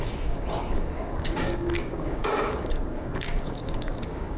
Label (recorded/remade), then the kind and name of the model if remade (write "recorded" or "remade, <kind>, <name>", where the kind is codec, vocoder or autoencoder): remade, codec, DAC